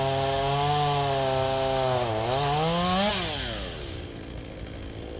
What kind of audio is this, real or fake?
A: real